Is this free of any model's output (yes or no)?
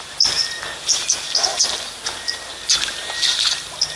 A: yes